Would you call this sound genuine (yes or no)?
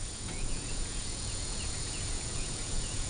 no